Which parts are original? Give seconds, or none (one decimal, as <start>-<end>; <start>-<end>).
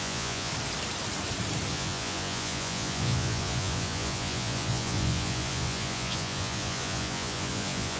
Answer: 0.5-1.7